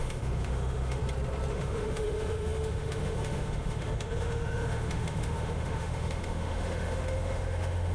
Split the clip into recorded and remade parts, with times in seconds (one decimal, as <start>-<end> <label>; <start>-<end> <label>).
0.0-1.0 remade; 1.0-1.5 recorded; 1.5-7.9 remade